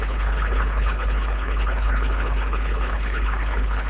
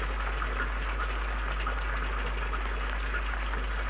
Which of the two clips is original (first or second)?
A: second